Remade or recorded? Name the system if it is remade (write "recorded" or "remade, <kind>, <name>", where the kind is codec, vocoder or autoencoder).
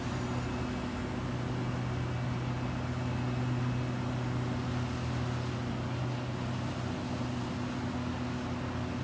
recorded